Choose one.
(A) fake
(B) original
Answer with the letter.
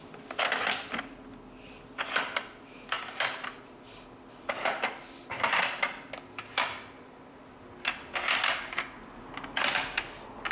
B